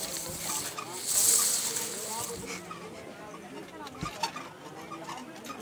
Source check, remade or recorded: recorded